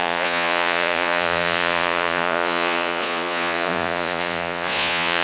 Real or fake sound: fake